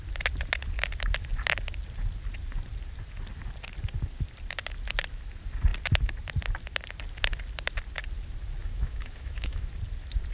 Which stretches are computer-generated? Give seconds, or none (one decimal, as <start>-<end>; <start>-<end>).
8.6-9.7